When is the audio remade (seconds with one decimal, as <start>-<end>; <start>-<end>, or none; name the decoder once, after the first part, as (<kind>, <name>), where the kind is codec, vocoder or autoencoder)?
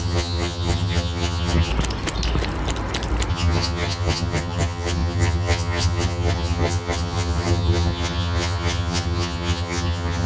0.0-1.7 (vocoder, HiFi-GAN); 3.3-10.3